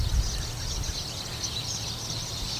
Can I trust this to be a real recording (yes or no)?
yes